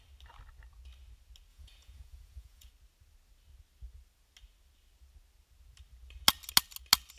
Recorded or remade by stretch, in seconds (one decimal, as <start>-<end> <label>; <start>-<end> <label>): 0.0-1.5 recorded; 1.5-2.7 remade; 2.7-7.2 recorded